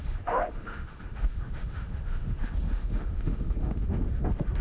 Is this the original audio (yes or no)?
no